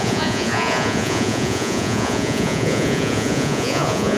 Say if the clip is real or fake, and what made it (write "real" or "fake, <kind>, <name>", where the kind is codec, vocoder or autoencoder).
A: fake, vocoder, Vocos